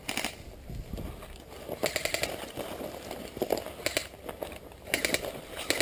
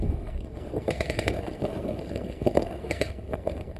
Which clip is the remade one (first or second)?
second